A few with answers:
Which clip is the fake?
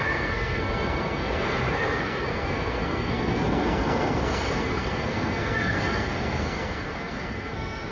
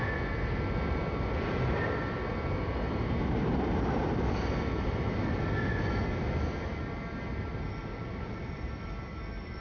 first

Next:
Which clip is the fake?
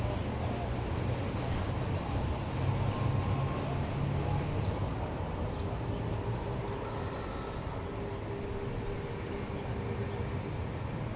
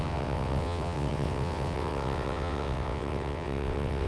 second